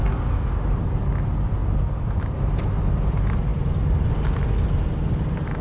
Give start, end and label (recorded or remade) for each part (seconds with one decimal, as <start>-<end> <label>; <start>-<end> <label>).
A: 0.0-0.6 remade; 0.6-5.6 recorded